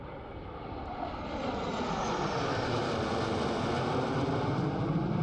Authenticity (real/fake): real